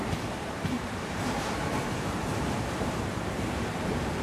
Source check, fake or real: fake